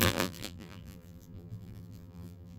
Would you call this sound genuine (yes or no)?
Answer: no